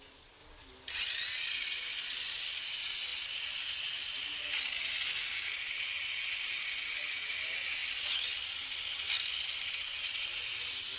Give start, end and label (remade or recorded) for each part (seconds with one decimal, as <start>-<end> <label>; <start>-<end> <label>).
0.0-11.0 recorded